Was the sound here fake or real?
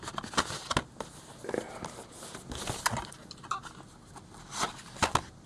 real